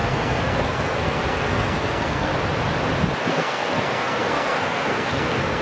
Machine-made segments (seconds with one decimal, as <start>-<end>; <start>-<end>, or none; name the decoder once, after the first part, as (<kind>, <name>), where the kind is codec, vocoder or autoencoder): 0.0-2.3 (codec, SNAC); 3.3-5.6